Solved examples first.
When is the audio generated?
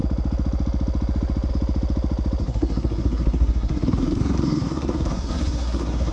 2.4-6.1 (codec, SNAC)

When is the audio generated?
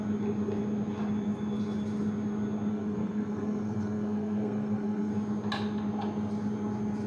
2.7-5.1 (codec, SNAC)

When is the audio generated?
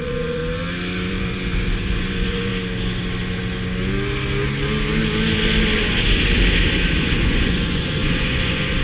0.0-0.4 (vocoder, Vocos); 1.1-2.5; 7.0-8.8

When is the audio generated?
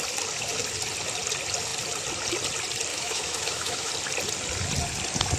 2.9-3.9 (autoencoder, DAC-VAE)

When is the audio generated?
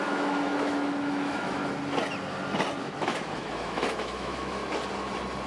0.0-1.6 (autoencoder, DAC-VAE); 2.8-4.6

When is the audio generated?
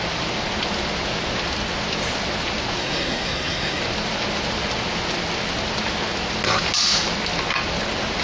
2.8-3.8 (codec, SNAC)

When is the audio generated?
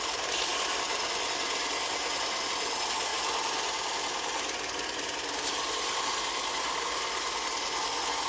none